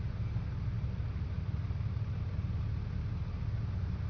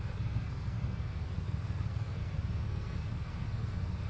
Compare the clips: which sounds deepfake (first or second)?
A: second